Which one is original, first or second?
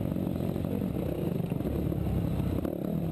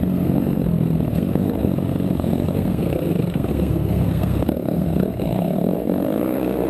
first